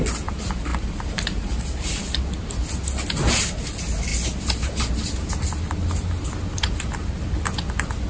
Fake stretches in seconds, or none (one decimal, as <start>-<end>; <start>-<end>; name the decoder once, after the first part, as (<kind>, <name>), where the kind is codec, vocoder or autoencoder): 0.7-2.0 (vocoder, BigVGAN v2); 4.1-5.3